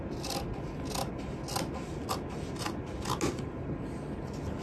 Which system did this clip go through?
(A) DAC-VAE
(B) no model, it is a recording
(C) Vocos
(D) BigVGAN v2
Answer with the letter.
B